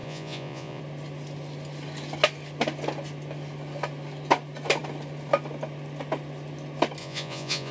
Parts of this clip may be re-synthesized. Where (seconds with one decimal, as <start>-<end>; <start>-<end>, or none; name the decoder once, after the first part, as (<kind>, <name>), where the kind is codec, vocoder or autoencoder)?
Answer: 0.0-0.8 (vocoder, Vocos); 7.0-7.7